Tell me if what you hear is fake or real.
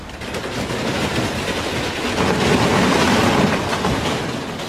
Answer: real